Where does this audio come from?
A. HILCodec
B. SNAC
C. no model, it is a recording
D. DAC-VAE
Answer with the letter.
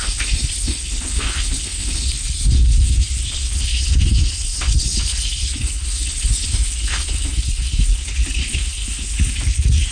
A